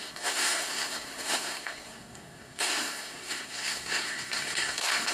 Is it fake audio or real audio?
fake